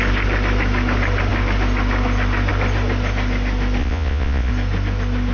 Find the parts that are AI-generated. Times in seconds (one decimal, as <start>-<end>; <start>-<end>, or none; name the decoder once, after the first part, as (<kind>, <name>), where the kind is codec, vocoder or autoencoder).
3.8-4.5 (vocoder, Vocos)